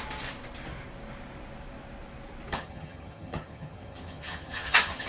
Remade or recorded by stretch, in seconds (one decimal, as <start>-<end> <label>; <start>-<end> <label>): 0.0-2.5 recorded; 2.5-5.1 remade